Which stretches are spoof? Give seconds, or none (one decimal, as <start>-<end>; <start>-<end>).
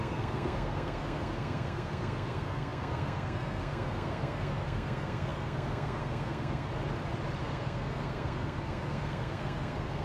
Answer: 0.0-6.7; 7.4-10.0